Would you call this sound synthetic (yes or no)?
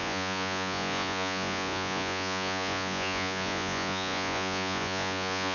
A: yes